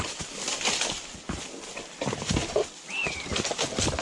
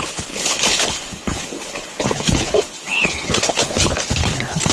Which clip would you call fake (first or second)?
second